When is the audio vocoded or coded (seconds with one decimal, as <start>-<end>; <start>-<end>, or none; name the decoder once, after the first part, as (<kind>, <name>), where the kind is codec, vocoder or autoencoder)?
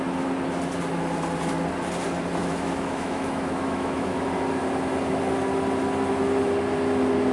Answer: 2.4-4.2 (autoencoder, DAC-VAE)